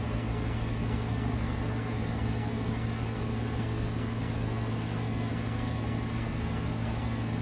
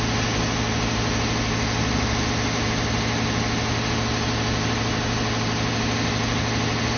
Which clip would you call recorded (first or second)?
second